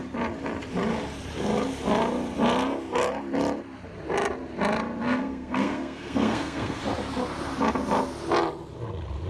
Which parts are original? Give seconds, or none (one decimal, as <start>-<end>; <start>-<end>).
0.0-5.0; 6.8-9.3